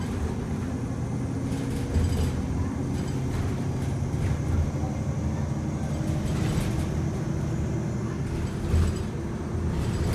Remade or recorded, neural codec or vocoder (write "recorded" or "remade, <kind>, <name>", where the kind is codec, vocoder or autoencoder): recorded